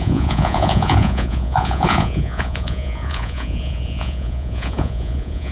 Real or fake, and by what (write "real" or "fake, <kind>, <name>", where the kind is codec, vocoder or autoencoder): fake, vocoder, Vocos